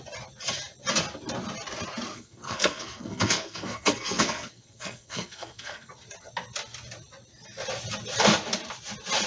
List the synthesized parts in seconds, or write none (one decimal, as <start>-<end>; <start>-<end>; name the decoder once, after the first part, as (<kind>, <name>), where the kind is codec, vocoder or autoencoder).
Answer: 2.1-5.9 (codec, SNAC)